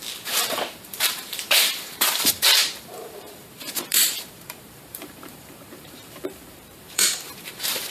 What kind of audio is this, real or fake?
fake